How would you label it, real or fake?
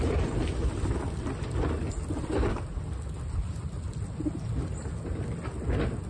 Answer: real